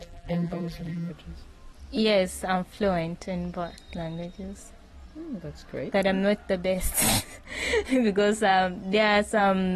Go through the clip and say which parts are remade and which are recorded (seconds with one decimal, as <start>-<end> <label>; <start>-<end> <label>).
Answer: 0.0-1.1 remade; 1.1-9.8 recorded